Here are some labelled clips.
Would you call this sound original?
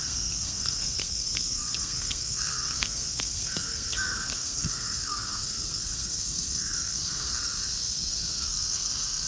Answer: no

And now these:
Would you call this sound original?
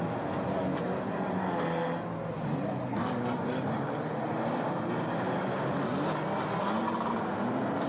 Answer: yes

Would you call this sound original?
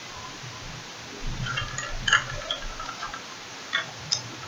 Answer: yes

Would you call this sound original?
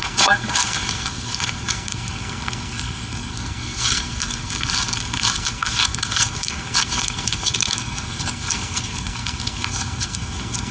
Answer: no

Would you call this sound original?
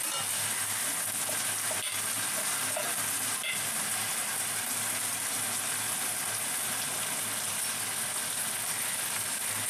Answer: yes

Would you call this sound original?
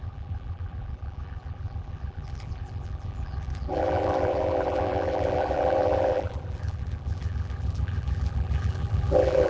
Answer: no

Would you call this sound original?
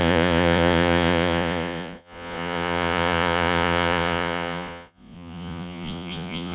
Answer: no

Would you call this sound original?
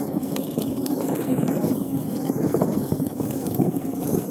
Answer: no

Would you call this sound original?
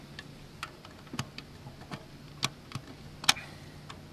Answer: yes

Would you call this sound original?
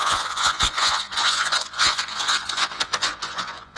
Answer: no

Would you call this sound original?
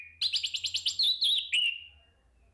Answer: yes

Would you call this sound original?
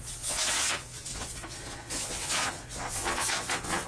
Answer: no